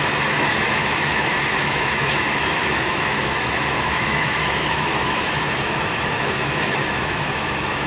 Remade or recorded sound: remade